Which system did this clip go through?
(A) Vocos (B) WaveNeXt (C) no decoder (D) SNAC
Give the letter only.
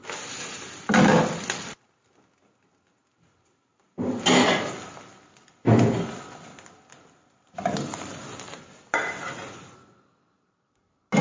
C